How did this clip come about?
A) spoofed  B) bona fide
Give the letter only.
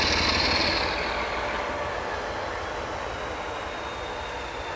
B